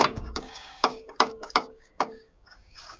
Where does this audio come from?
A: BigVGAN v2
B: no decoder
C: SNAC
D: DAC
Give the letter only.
D